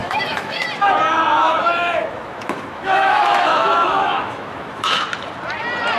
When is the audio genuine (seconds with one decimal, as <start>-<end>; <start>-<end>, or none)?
0.6-1.4; 5.0-6.0